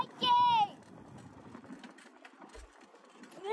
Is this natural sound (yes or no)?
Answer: yes